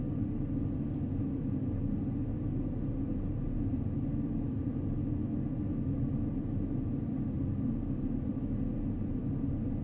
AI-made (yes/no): no